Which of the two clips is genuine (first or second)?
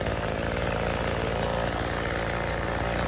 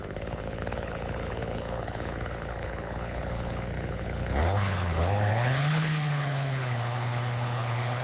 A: first